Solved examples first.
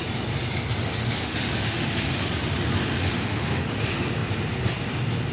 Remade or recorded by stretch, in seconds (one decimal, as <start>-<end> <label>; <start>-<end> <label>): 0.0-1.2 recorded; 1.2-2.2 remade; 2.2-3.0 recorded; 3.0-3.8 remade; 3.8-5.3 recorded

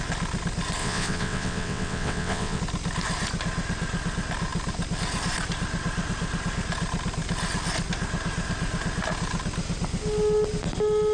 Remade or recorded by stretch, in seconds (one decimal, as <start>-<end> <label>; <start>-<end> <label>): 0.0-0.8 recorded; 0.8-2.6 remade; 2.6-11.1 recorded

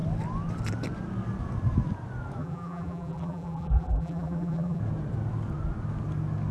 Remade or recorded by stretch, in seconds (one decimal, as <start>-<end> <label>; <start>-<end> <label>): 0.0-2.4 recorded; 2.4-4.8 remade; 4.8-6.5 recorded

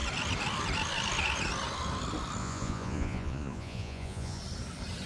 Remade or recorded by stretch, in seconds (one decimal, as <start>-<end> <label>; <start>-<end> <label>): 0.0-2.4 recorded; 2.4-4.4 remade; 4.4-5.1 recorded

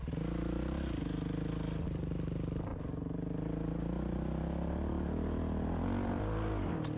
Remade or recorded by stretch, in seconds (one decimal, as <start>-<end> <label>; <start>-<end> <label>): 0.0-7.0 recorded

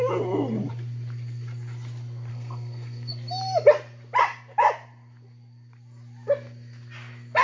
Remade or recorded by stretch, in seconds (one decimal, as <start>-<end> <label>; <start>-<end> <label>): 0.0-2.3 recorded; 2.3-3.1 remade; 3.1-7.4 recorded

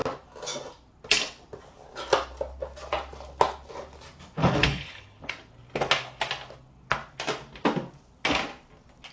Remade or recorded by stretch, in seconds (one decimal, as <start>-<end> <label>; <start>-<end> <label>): 0.0-4.4 recorded; 4.4-5.3 remade; 5.3-9.1 recorded

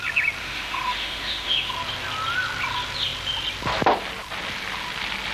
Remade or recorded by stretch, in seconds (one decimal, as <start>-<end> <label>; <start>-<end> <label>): 0.0-0.4 recorded; 0.4-1.7 remade; 1.7-5.3 recorded